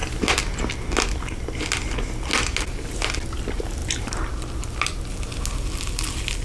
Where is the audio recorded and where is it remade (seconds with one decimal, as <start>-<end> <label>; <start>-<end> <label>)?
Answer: 0.0-6.4 recorded